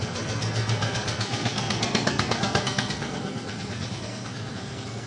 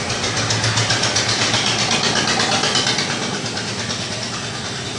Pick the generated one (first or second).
first